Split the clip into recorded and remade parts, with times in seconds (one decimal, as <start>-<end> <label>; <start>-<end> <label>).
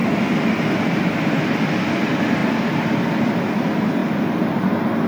0.0-5.1 recorded